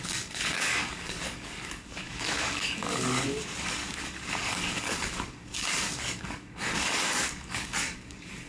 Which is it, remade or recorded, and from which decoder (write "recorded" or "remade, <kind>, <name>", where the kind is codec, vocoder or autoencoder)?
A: remade, codec, DAC